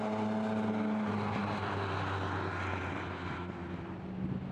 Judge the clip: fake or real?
real